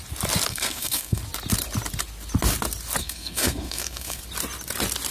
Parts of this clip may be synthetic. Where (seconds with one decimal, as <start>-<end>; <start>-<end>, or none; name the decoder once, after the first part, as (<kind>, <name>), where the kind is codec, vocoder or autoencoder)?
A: 0.5-1.2 (codec, SNAC); 3.0-4.2